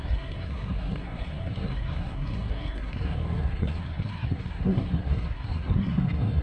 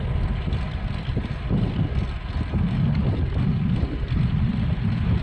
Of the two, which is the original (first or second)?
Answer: second